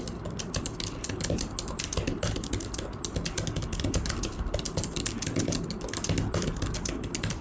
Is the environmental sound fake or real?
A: real